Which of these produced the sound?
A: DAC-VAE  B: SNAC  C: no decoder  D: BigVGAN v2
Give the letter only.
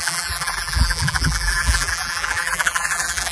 D